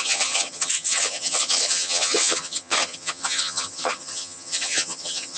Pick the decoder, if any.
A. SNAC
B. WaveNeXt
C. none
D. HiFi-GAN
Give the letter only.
D